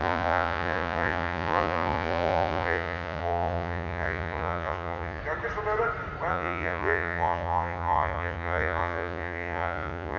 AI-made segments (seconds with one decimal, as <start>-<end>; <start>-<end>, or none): 0.0-5.2; 6.3-10.2